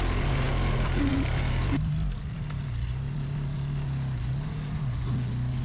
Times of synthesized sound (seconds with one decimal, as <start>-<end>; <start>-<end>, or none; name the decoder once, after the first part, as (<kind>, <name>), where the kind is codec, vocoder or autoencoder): none